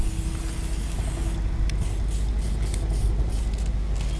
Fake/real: real